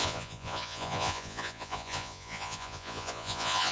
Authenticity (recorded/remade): remade